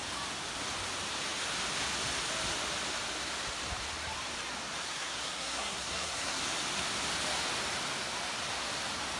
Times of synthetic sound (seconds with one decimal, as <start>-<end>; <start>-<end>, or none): 4.9-6.4

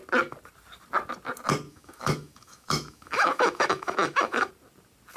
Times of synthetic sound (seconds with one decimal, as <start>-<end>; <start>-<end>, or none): 1.7-4.5

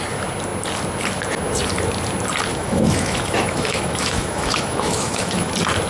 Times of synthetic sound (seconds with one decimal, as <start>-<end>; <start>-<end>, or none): 2.5-5.5

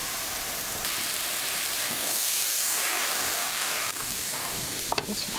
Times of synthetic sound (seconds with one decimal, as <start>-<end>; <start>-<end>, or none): 1.8-4.8

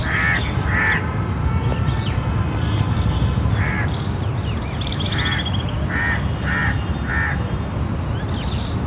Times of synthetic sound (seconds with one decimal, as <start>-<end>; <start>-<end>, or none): none